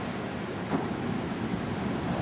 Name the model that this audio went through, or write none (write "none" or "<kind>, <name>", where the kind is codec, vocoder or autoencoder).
none